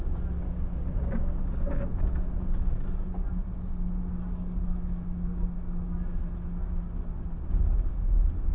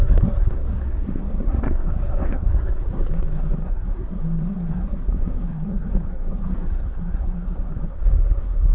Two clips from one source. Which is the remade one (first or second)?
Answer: second